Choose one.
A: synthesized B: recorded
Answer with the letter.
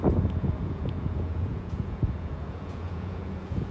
A